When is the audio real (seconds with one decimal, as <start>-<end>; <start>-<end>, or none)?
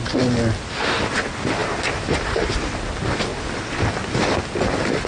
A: 0.0-1.6; 2.7-5.1